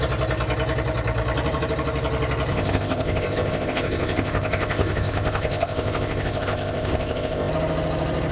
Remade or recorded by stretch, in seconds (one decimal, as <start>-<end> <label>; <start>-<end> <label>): 0.0-2.5 recorded; 2.5-7.5 remade; 7.5-8.3 recorded